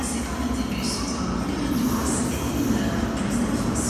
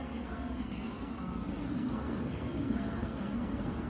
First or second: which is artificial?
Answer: second